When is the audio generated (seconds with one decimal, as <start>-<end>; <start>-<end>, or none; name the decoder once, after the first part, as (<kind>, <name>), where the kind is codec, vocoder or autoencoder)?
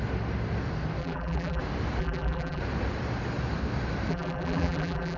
1.0-1.6 (vocoder, BigVGAN v2); 2.0-2.6; 4.1-5.2